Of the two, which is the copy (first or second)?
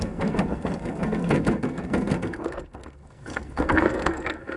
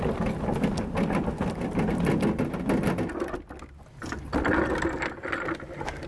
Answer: first